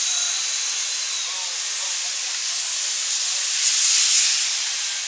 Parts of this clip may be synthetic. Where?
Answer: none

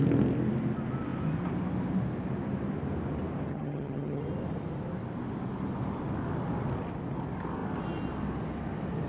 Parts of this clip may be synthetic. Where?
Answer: 3.5-4.2 (vocoder, HiFi-GAN)

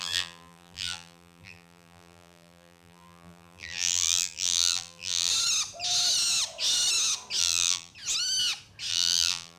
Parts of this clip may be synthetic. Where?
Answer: 0.0-5.3 (vocoder, BigVGAN v2); 7.4-7.9; 8.9-9.6